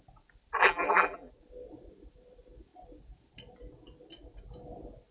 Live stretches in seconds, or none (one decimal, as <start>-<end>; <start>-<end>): 0.0-0.6; 1.3-5.1